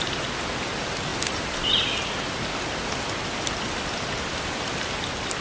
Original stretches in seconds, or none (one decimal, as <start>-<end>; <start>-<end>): 0.0-5.4